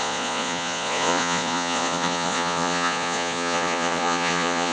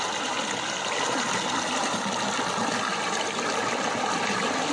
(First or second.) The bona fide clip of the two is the second